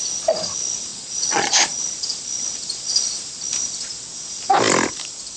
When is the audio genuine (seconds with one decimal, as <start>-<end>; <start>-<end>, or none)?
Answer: 0.0-0.9; 1.8-5.4

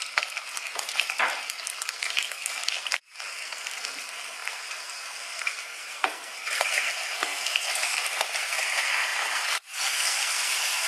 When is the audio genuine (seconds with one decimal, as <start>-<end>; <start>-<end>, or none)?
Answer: none

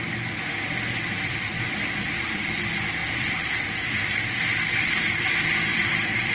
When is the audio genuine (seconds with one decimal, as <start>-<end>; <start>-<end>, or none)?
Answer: 0.0-1.0; 2.6-3.0; 3.5-5.7

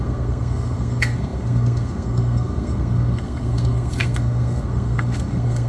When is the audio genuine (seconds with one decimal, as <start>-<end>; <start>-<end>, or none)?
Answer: none

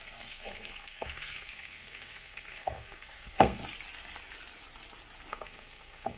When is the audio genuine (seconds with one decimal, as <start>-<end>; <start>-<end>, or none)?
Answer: 3.6-5.3

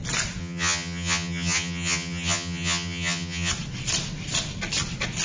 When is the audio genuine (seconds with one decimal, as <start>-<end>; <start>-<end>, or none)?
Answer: 0.0-0.4; 3.5-5.2

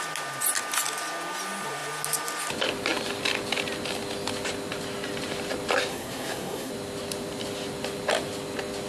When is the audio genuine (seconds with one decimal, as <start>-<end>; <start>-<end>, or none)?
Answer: 0.0-5.9; 6.7-8.9

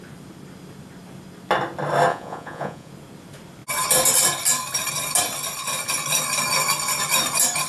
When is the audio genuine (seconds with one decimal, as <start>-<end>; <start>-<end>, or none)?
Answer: 0.0-2.1; 2.9-7.7